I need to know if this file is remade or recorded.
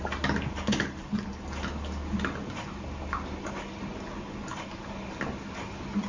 recorded